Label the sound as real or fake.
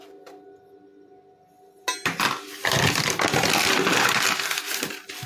real